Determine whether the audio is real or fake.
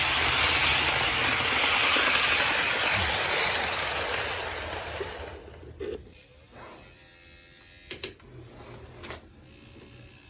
real